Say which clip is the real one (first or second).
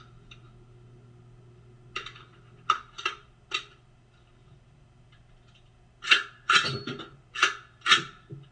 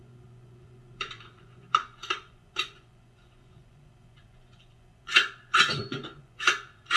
first